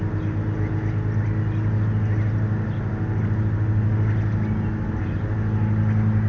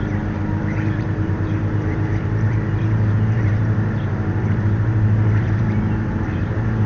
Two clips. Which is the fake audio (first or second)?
second